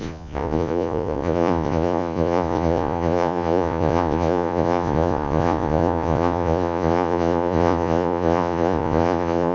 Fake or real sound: fake